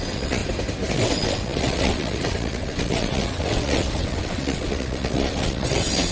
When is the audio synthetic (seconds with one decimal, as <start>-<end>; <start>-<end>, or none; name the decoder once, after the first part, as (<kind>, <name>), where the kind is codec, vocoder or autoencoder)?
0.0-0.4 (vocoder, WaveNeXt); 0.9-6.1